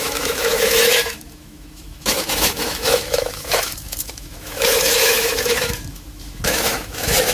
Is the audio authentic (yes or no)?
no